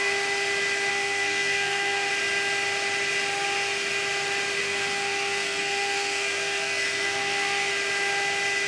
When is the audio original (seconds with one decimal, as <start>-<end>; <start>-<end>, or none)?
0.0-0.9; 2.1-4.6; 7.7-8.7